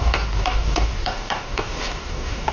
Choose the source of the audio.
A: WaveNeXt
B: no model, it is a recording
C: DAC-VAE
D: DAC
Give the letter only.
D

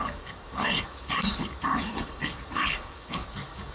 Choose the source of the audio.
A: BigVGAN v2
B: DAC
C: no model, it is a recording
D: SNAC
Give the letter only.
B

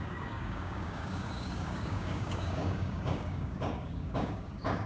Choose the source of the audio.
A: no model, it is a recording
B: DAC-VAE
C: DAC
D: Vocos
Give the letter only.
C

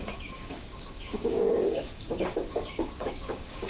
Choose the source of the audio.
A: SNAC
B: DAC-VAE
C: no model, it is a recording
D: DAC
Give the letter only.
D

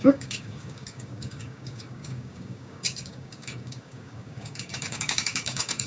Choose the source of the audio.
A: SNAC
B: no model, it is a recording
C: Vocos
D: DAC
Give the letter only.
D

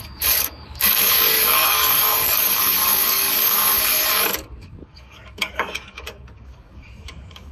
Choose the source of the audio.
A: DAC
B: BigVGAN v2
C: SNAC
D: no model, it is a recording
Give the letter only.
A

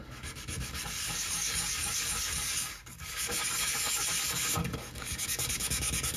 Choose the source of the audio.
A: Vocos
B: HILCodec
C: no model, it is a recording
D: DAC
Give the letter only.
D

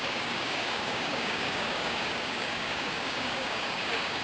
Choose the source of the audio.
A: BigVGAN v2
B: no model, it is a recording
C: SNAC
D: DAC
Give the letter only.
D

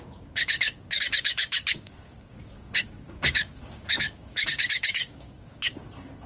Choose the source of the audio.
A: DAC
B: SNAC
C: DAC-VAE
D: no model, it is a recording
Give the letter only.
A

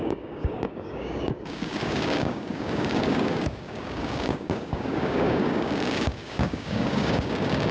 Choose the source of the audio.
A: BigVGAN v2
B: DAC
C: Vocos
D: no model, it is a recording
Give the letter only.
B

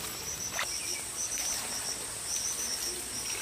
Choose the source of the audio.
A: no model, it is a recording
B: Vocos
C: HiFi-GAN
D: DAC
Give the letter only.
A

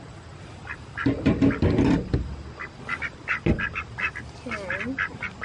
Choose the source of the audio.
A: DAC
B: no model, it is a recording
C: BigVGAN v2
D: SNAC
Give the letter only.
B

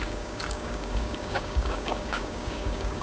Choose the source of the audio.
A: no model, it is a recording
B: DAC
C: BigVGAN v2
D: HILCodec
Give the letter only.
B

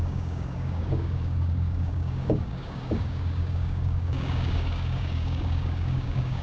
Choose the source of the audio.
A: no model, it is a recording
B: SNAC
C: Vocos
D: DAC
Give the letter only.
D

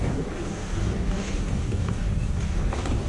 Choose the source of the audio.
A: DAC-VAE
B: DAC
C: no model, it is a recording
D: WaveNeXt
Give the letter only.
B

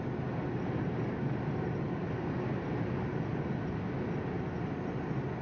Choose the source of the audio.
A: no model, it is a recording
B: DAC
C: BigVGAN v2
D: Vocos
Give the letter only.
A